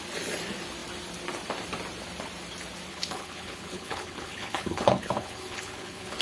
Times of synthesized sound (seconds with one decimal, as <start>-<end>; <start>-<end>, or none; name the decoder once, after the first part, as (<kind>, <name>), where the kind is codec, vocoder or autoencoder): 2.9-6.2 (codec, HILCodec)